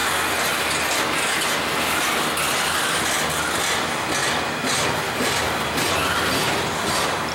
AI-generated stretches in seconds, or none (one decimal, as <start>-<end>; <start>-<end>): none